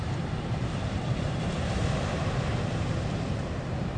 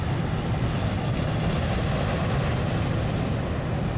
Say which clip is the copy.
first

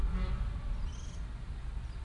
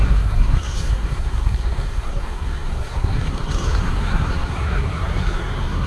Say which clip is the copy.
second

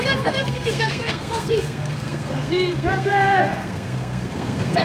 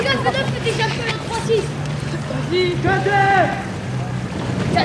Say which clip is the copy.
first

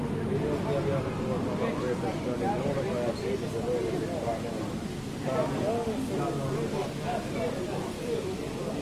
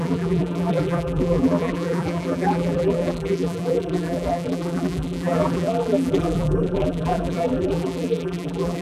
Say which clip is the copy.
second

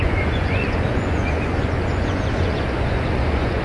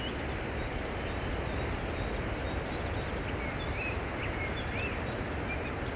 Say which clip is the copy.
first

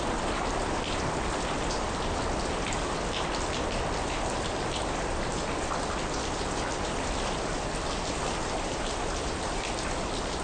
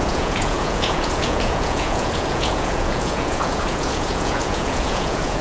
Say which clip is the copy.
second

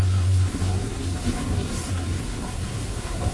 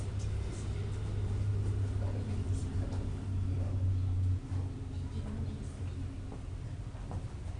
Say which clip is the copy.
first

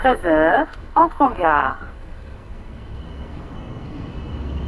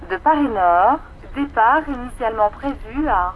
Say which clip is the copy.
first